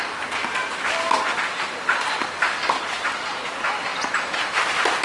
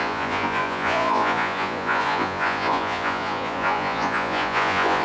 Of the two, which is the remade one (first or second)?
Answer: second